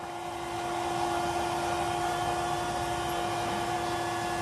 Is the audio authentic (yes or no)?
yes